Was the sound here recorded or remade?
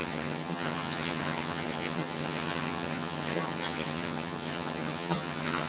remade